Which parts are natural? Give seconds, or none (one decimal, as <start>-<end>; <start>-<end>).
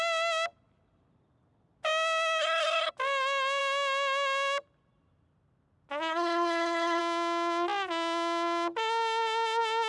0.0-2.4; 2.9-6.1; 7.0-9.9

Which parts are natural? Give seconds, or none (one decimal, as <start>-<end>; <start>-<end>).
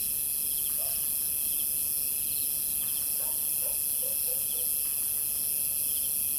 0.0-6.4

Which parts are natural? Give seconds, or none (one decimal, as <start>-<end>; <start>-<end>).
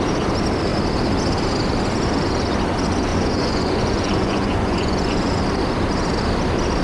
0.0-3.1; 5.4-6.8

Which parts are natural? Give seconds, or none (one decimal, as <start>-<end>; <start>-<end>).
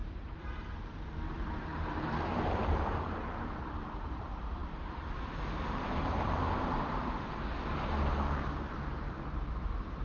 7.0-8.7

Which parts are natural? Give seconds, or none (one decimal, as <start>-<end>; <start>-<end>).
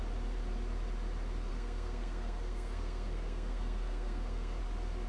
0.0-1.5; 4.6-5.1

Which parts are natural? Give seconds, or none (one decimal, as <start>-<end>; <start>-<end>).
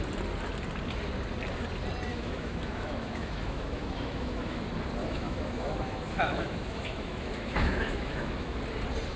0.0-2.1; 4.6-5.0; 8.6-9.2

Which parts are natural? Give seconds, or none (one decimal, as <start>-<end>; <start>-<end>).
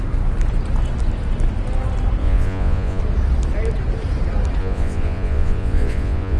0.0-2.2; 3.0-4.6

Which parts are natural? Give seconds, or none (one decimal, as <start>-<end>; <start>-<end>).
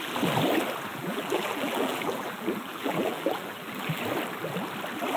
0.0-0.9; 4.0-5.2